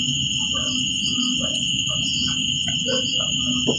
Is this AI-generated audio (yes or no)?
no